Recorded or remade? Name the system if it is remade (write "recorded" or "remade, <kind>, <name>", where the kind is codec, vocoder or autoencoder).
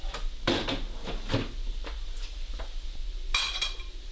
recorded